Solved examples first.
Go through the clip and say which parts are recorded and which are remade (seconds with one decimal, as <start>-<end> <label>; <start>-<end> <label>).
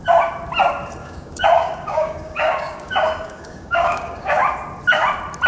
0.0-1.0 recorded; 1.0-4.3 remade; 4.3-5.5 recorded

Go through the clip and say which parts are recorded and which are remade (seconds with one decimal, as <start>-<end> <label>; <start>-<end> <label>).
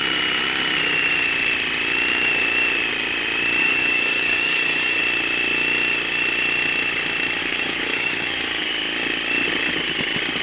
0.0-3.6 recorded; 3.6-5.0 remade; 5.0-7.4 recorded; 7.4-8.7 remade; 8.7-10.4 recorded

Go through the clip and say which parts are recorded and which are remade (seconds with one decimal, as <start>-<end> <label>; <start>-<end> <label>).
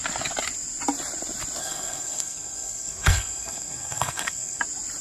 0.0-1.6 recorded; 1.6-4.6 remade; 4.6-5.0 recorded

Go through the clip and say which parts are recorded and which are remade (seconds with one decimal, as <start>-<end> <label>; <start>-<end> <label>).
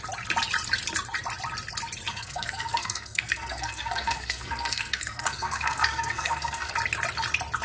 0.0-2.1 recorded; 2.1-6.7 remade; 6.7-7.6 recorded